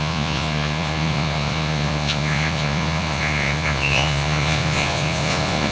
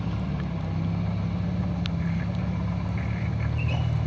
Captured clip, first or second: second